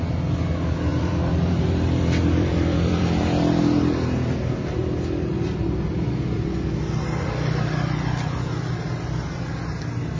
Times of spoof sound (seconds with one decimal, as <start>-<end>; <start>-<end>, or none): 0.9-3.2; 4.8-5.9